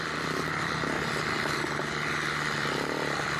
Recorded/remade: recorded